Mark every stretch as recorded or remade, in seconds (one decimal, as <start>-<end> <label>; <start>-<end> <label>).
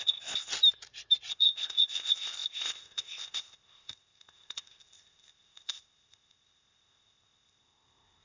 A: 0.0-0.5 remade; 0.5-1.3 recorded; 1.3-8.2 remade